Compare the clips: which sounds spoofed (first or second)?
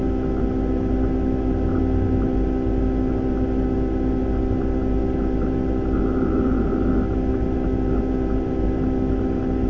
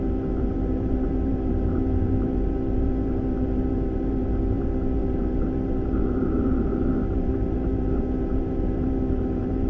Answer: second